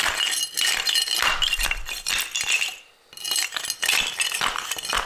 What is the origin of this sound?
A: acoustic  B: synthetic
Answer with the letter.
A